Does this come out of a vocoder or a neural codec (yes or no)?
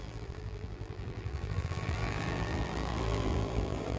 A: yes